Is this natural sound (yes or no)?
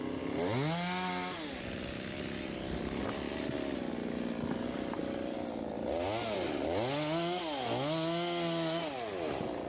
yes